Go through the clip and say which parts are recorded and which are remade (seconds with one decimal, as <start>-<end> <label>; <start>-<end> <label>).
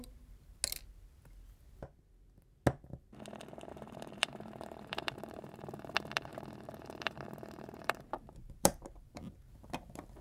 0.0-0.6 remade; 0.6-3.7 recorded; 3.7-10.2 remade